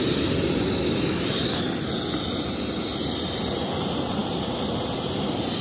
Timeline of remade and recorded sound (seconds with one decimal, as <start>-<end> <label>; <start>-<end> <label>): 0.0-5.6 recorded